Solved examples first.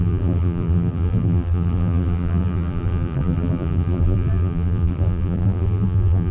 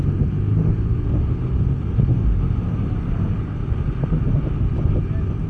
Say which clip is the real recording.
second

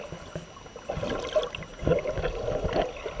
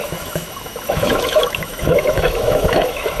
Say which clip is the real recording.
first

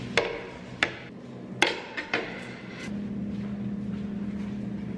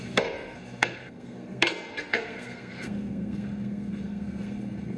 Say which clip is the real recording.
first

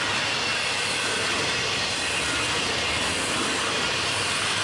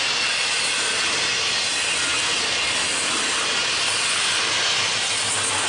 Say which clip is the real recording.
second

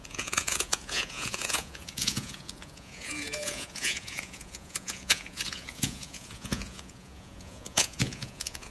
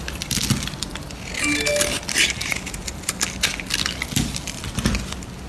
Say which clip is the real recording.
second